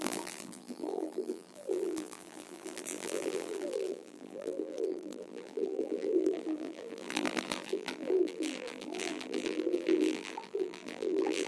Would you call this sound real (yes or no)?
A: no